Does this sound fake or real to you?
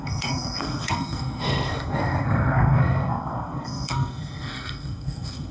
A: fake